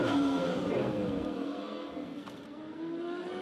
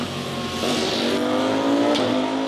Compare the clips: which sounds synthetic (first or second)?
first